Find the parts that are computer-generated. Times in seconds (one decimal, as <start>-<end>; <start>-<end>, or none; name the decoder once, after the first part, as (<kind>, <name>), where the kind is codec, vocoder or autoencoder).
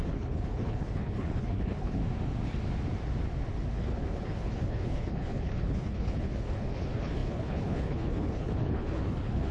0.0-2.0 (codec, HILCodec); 3.7-9.5